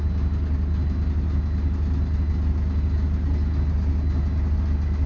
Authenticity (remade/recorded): recorded